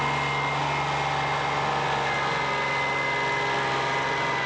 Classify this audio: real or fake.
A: real